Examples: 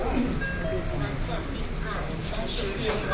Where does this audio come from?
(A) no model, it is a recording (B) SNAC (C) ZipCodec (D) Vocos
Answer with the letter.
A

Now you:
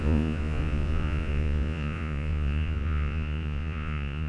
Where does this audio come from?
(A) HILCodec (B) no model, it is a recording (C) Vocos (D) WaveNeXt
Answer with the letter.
C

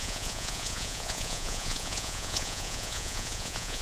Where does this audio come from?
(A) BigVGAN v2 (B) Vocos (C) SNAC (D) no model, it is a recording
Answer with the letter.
B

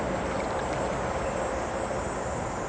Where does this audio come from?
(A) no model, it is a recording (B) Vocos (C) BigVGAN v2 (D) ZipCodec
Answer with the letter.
A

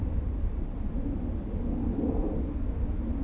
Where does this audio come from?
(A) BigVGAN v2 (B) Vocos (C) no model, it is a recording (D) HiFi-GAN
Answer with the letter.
C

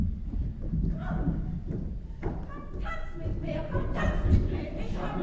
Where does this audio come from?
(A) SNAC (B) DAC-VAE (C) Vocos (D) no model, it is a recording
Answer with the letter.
D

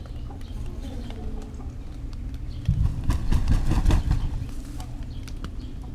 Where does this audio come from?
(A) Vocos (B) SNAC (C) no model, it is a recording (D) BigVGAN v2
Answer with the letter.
C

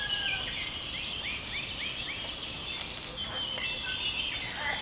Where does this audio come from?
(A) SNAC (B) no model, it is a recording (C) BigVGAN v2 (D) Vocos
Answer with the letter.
B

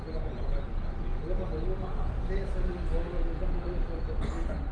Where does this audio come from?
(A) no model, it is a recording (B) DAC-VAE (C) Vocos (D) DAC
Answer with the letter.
A